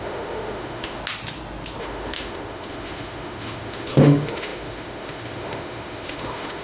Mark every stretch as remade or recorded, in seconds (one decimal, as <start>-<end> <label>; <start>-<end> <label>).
0.0-1.0 remade; 1.0-1.8 recorded; 1.8-6.6 remade